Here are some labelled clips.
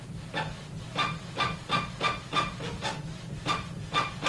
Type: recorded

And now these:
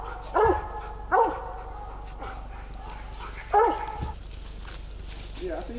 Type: recorded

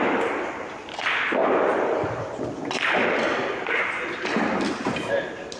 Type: recorded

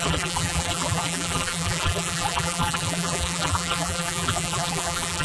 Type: remade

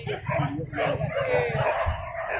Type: recorded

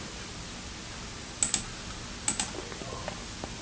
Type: recorded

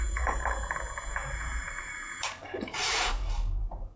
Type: remade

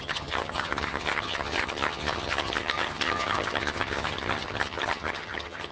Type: remade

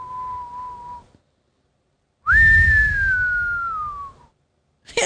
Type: recorded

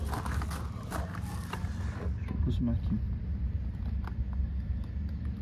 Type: recorded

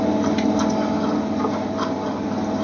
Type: recorded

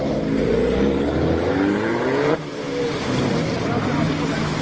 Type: remade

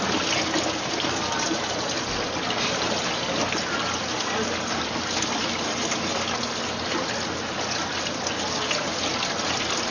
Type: recorded